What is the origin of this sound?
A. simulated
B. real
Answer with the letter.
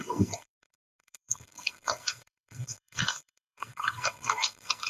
A